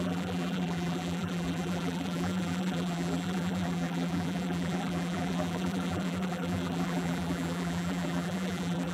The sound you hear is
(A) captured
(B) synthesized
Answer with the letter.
B